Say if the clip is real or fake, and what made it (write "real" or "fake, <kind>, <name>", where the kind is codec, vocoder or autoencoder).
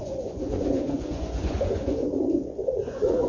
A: fake, vocoder, Vocos